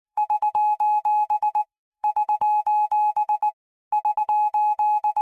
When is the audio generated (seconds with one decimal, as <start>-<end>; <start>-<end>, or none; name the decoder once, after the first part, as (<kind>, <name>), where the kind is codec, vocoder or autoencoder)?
0.0-3.4 (autoencoder, DAC-VAE); 4.2-5.2